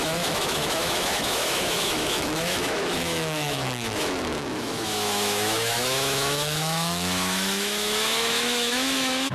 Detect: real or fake fake